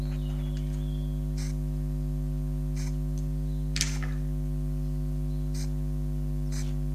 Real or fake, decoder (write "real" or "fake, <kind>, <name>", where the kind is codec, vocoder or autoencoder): real